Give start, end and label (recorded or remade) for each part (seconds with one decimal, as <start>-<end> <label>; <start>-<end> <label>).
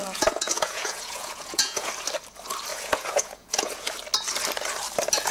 0.0-1.9 remade; 1.9-2.7 recorded; 2.7-3.9 remade; 3.9-5.3 recorded